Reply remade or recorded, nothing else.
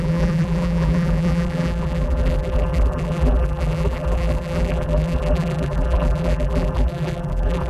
remade